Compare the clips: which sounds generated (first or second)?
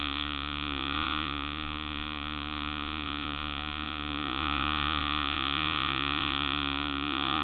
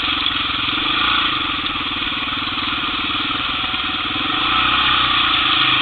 first